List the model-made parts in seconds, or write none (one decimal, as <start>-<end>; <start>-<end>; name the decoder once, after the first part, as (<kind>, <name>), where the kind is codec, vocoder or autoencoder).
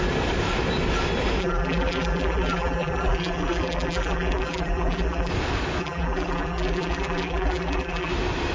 1.4-5.3 (vocoder, BigVGAN v2); 5.8-8.1